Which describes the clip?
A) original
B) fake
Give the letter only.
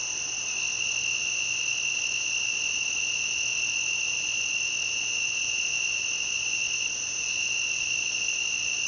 A